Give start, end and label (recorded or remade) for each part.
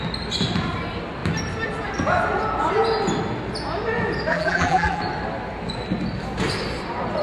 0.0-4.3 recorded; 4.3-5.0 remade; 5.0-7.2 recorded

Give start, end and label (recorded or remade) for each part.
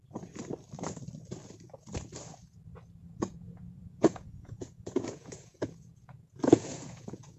0.0-3.0 recorded; 3.0-7.4 remade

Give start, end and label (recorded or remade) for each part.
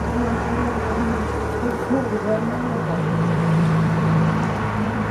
0.0-0.6 recorded; 0.6-1.4 remade; 1.4-1.8 recorded; 1.8-5.1 remade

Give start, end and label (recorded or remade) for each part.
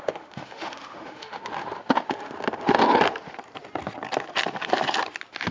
0.0-2.8 remade; 2.8-5.5 recorded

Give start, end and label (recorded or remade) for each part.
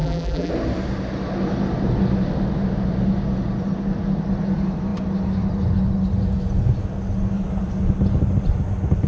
0.0-0.5 remade; 0.5-9.1 recorded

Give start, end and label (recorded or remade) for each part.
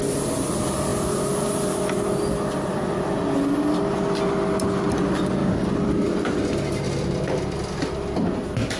0.0-8.8 recorded